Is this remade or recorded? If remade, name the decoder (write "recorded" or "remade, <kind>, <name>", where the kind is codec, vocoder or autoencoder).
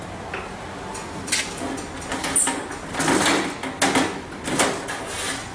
recorded